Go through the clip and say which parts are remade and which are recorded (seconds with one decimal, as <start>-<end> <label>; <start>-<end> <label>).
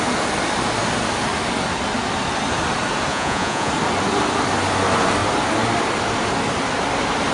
0.0-3.1 recorded; 3.1-3.7 remade; 3.7-7.3 recorded